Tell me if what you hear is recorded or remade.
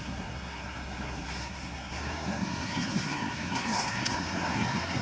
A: remade